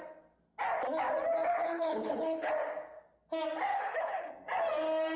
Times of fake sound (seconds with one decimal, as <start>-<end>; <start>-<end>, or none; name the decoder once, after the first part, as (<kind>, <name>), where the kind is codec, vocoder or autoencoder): 1.5-2.5 (codec, HILCodec); 3.7-4.3